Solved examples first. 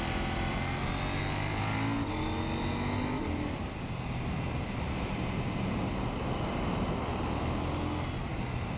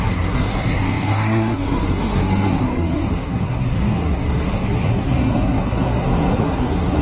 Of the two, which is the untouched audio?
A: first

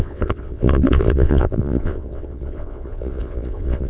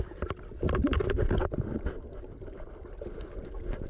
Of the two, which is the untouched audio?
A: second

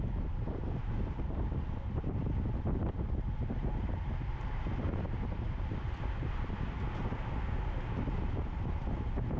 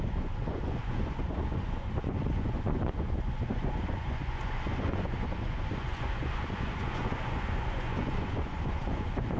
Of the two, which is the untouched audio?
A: first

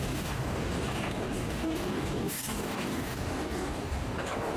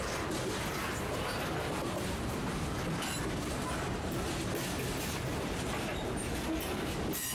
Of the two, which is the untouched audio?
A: second